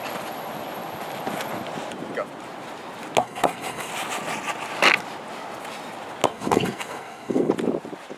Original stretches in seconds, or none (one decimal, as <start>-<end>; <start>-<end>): 0.0-3.2; 3.9-6.3; 7.5-8.2